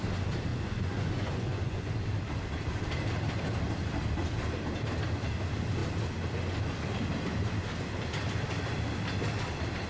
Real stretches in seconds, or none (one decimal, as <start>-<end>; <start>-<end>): 0.0-0.5; 1.9-9.9